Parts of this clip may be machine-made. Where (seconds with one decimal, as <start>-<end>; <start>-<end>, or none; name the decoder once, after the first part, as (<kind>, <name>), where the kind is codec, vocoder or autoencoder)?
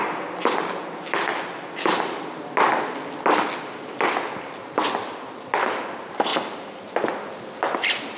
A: none